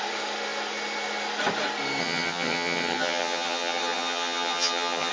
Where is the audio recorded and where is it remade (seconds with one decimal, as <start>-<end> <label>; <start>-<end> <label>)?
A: 0.0-2.0 recorded; 2.0-5.1 remade